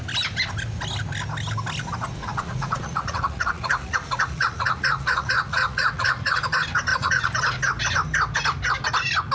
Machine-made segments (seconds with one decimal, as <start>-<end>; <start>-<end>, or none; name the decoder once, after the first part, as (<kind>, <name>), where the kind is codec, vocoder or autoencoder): 2.2-6.4 (vocoder, Vocos); 6.9-7.4